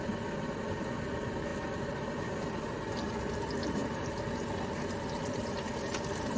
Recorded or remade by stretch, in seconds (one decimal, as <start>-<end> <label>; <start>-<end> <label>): 0.0-6.4 recorded